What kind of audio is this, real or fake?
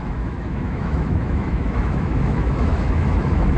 fake